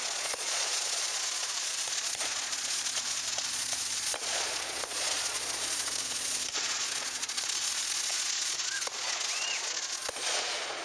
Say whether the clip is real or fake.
fake